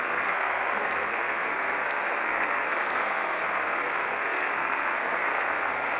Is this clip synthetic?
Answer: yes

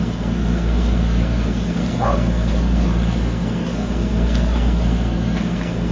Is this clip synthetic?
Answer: yes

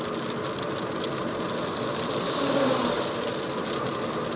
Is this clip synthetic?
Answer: no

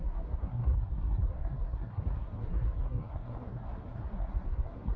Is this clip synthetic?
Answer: yes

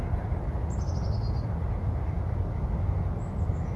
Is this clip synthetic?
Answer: no